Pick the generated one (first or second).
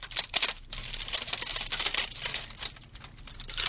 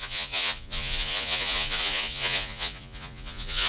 second